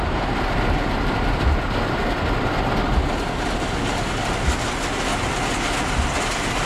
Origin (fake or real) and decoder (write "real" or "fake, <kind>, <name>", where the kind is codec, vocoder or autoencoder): real